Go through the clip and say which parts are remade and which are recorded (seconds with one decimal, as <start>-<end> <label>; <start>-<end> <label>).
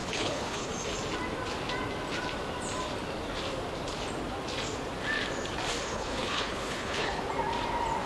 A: 0.0-0.7 remade; 0.7-5.8 recorded; 5.8-7.2 remade; 7.2-8.1 recorded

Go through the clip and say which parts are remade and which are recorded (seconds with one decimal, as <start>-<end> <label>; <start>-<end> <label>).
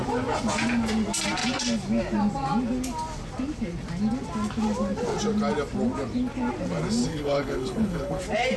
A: 0.0-7.0 recorded; 7.0-8.2 remade; 8.2-8.6 recorded